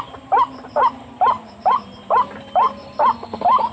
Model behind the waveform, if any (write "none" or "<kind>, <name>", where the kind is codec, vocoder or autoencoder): none